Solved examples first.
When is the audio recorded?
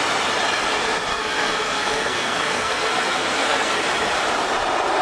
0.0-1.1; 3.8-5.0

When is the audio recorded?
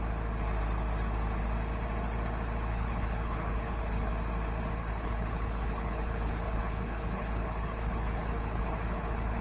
0.0-2.7; 4.1-4.8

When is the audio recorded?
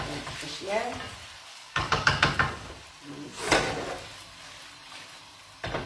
0.0-1.5; 2.7-5.9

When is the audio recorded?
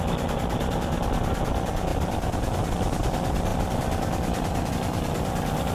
0.0-5.7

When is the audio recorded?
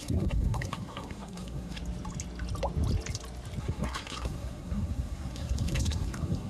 1.8-3.6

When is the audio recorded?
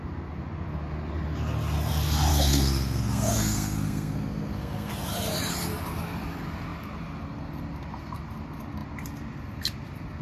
0.0-2.3; 4.9-10.2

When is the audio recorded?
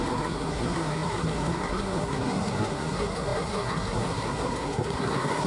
none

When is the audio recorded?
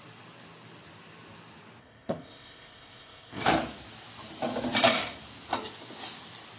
0.0-1.8; 3.4-6.6